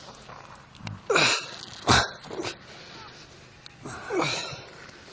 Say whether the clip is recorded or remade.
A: recorded